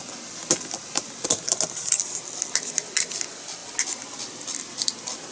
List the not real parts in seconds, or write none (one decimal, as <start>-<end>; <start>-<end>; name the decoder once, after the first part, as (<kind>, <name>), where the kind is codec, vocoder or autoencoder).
none